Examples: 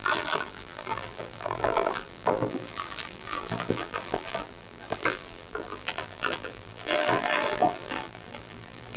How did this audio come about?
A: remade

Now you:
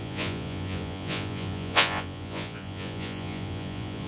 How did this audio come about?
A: remade